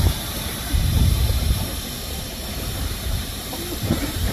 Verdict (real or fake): fake